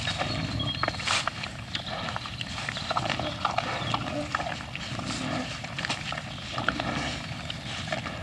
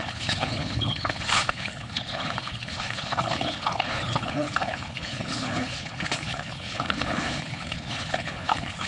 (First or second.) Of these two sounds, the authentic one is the first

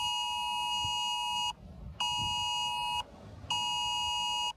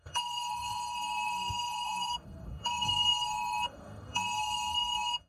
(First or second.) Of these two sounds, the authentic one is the first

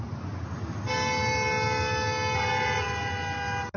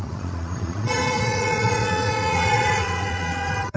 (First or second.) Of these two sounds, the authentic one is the first